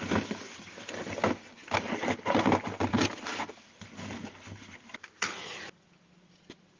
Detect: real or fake real